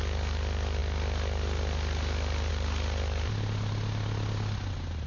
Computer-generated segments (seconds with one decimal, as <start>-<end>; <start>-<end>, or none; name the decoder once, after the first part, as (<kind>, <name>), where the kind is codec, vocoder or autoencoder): none